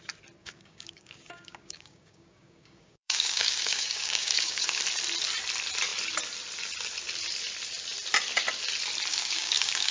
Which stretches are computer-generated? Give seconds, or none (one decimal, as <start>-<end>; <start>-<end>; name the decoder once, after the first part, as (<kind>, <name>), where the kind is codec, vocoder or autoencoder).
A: 0.4-4.8 (codec, DAC); 9.1-9.9